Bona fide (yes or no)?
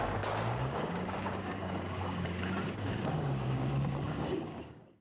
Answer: no